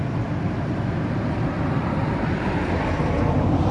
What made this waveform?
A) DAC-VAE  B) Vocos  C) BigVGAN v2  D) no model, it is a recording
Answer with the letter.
C